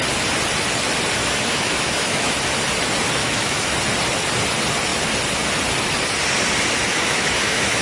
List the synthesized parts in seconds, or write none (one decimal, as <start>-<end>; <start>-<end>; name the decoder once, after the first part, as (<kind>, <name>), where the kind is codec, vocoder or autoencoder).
1.2-2.3 (autoencoder, DAC-VAE); 3.2-3.7; 6.9-7.8